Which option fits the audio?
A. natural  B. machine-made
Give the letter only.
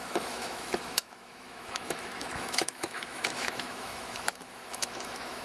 B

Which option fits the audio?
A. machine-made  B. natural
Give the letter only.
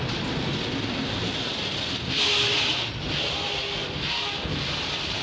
B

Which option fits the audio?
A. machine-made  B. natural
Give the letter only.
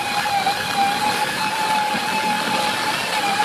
B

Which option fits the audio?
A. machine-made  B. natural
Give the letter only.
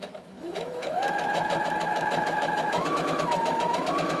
A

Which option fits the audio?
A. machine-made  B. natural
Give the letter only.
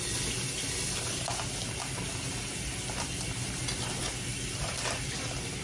B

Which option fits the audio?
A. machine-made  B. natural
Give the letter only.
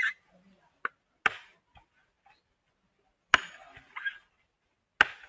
B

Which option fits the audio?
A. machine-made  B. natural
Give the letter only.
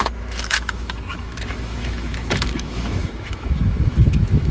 A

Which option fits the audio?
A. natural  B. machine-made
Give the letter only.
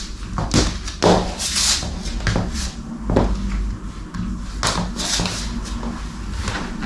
A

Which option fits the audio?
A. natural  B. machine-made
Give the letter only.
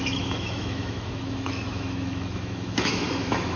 B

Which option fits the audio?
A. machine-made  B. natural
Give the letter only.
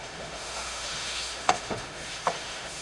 A